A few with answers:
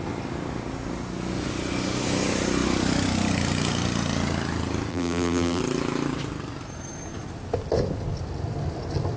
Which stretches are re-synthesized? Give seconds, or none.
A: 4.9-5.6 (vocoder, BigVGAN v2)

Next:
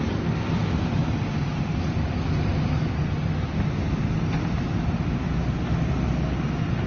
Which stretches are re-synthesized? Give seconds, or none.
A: none

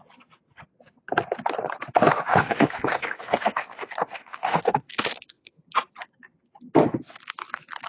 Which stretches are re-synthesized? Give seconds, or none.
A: 2.4-5.6 (autoencoder, DAC-VAE)